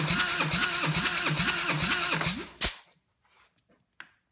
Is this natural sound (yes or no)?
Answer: yes